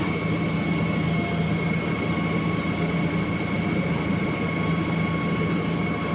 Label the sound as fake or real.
real